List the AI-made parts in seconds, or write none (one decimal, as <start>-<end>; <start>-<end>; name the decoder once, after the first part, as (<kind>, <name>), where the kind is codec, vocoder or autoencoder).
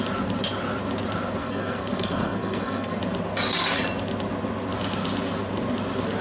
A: 1.4-3.0 (codec, SNAC)